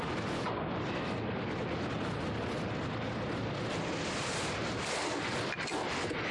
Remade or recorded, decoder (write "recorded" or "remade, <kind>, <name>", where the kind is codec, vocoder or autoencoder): recorded